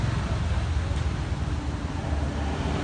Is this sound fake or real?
real